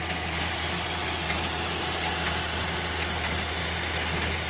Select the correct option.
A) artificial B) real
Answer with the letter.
B